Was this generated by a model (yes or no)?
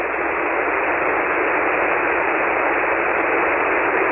no